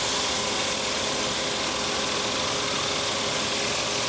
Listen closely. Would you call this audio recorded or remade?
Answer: recorded